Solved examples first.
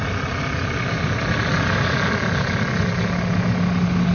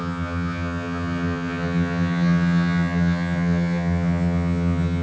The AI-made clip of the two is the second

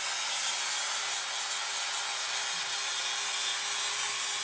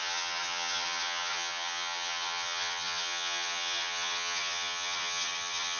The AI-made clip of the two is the second